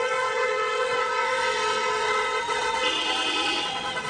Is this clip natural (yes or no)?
no